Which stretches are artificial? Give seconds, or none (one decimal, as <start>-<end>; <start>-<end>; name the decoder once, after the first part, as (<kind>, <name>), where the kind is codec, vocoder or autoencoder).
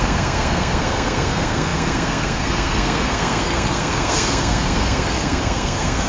0.0-6.1 (codec, SNAC)